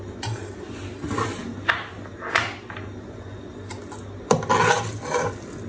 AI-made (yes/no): no